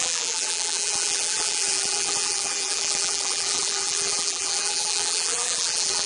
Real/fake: fake